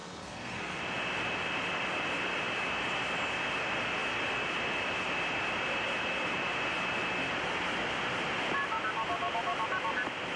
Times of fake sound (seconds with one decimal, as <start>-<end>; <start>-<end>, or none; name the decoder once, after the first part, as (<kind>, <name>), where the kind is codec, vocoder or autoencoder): 0.0-0.8 (codec, SNAC)